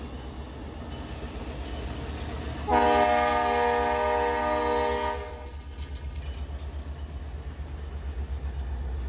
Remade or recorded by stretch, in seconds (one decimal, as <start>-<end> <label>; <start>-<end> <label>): 0.0-5.3 recorded; 5.3-6.2 remade; 6.2-9.1 recorded